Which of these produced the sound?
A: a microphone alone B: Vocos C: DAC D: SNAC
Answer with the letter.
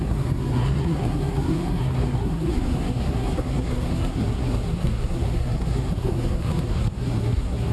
D